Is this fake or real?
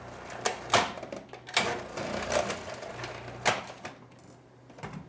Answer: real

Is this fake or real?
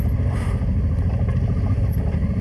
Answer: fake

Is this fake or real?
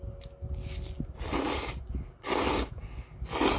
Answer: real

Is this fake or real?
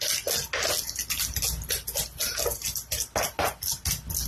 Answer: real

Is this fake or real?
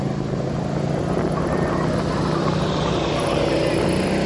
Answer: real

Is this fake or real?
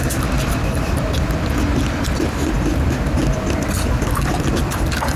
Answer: fake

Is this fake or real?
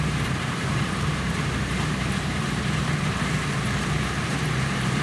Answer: fake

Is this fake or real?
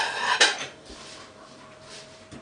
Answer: fake